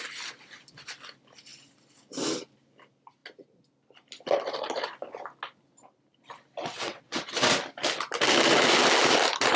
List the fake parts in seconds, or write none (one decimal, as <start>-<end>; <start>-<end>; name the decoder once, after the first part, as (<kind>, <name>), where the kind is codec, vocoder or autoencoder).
6.6-7.2 (vocoder, WaveNeXt)